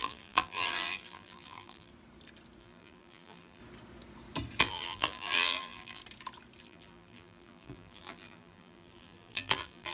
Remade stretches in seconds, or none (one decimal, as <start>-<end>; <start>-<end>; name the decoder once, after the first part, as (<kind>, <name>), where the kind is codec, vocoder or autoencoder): 0.0-1.9 (vocoder, BigVGAN v2); 2.6-3.6; 4.6-6.0; 6.6-9.9